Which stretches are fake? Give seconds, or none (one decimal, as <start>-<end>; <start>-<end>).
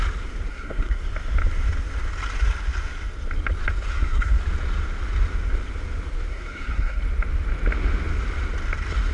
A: 0.5-1.0; 3.9-4.4; 6.3-7.0